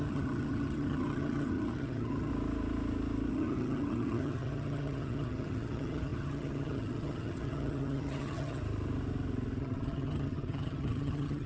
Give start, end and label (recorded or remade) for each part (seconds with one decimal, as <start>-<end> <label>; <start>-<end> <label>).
0.0-2.3 remade; 2.3-3.3 recorded; 3.3-8.6 remade; 8.6-9.6 recorded; 9.6-11.5 remade